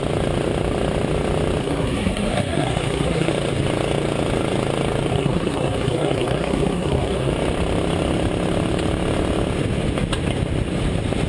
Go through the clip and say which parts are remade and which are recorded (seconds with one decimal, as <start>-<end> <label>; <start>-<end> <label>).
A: 0.0-1.6 recorded; 1.6-3.3 remade; 3.3-5.1 recorded; 5.1-7.3 remade; 7.3-11.3 recorded